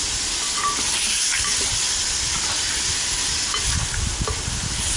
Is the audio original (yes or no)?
yes